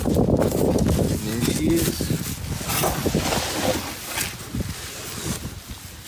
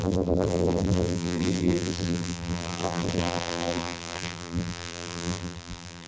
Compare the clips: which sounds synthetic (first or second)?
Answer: second